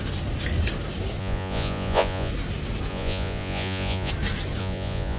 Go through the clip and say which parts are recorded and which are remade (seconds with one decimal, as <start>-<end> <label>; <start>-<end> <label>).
0.0-1.2 recorded; 1.2-2.3 remade; 2.3-2.9 recorded; 2.9-4.1 remade; 4.1-4.6 recorded; 4.6-5.2 remade